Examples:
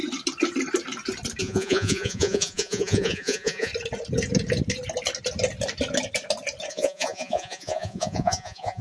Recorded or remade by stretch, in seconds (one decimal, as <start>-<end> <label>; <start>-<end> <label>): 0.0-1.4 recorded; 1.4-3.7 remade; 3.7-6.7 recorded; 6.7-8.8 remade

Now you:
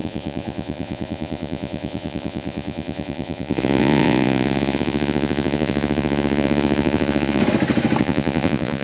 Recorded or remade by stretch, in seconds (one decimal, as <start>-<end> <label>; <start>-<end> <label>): 0.0-7.4 remade; 7.4-8.0 recorded; 8.0-8.8 remade

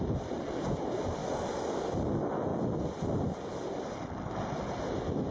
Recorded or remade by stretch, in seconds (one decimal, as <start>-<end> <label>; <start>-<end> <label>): 0.0-1.2 recorded; 1.2-1.8 remade; 1.8-5.3 recorded

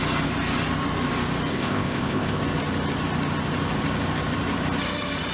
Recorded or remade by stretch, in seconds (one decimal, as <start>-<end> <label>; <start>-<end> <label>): 0.0-1.5 recorded; 1.5-2.4 remade; 2.4-5.3 recorded

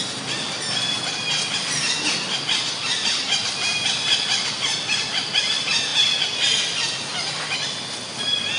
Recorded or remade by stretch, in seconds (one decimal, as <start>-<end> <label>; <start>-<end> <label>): 0.0-8.6 recorded

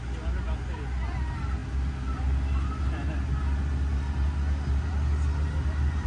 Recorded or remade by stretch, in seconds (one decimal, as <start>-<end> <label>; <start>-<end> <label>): 0.0-6.1 recorded